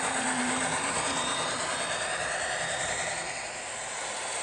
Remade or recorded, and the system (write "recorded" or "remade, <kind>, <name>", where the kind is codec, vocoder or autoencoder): recorded